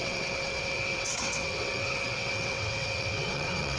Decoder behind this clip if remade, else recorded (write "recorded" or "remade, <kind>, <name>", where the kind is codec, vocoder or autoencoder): remade, vocoder, WaveNeXt